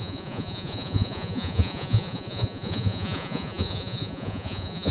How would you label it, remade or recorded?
remade